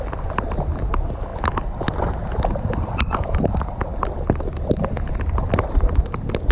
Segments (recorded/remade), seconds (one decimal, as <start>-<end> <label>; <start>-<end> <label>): 0.0-6.5 recorded